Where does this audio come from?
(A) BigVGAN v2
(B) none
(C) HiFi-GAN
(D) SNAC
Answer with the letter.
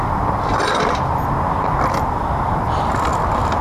B